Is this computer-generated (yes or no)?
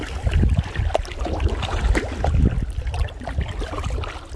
yes